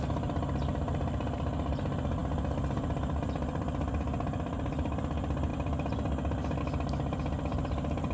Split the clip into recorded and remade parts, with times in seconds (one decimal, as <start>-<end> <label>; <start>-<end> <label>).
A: 0.0-8.1 recorded